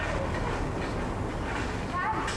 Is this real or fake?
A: real